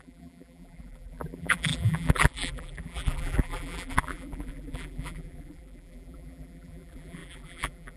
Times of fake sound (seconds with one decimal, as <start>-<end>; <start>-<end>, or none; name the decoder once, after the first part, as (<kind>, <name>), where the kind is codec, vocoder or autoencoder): 0.0-8.0 (vocoder, BigVGAN v2)

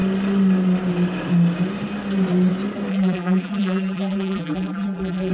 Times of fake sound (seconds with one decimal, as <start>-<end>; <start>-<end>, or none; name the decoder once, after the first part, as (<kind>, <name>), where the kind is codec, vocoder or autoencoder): 2.9-5.3 (vocoder, BigVGAN v2)